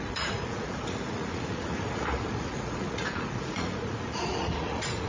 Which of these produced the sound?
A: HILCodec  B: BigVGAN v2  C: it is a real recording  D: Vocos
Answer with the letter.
D